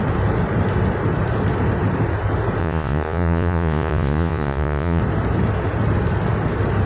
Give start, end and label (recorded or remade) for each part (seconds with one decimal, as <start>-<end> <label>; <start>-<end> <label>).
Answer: 0.0-2.6 recorded; 2.6-5.0 remade; 5.0-6.9 recorded